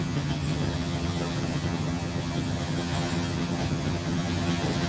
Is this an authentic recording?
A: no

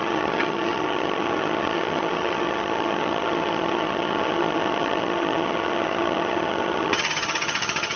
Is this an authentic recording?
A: no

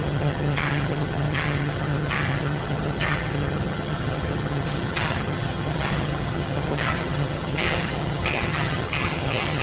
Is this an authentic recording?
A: no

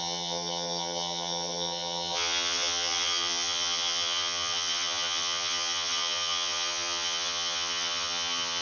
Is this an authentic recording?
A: no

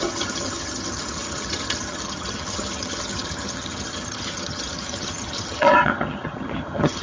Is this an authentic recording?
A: no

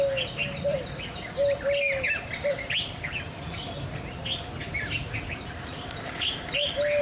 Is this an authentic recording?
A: yes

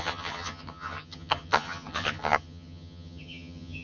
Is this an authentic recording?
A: no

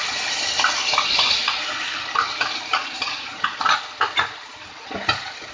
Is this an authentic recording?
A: yes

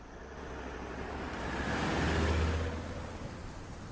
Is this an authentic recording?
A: yes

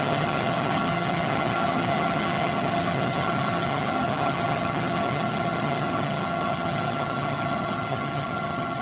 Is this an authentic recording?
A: no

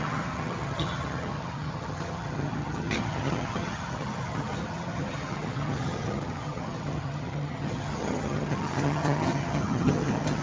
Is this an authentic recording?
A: no